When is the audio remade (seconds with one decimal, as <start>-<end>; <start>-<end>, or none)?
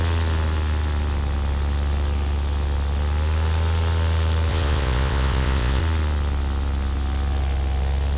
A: 4.5-5.8